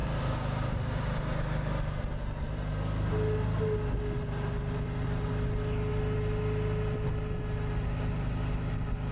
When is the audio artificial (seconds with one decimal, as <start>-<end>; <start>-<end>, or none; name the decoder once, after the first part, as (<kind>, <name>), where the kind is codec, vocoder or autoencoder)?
none